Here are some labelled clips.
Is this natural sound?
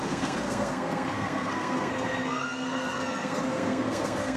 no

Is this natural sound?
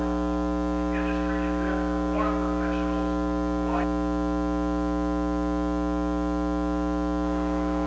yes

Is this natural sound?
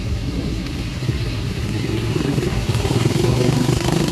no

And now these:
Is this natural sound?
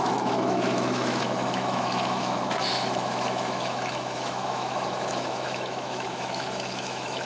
no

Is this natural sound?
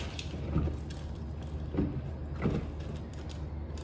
yes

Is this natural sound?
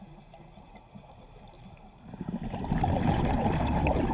yes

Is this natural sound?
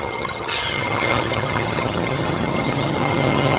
no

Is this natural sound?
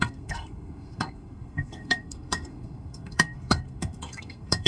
no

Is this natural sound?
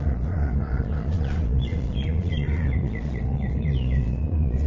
no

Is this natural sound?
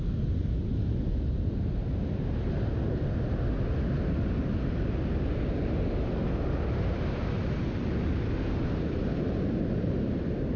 yes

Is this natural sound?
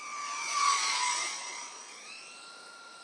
no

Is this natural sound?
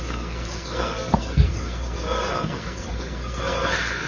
no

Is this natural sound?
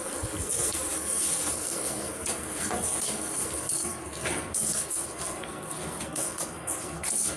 no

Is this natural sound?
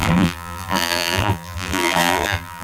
no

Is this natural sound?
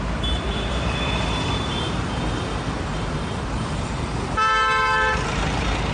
no